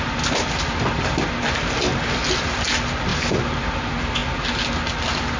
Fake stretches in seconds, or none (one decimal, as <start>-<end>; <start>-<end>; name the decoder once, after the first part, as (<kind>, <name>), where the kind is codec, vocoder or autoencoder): none